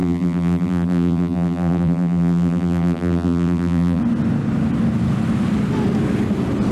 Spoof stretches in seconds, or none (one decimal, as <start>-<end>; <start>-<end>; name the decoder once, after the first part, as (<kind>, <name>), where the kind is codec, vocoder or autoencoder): 0.0-4.0 (vocoder, BigVGAN v2)